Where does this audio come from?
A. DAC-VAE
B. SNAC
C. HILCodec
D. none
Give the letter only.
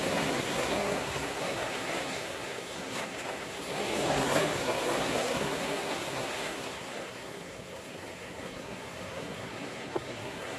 B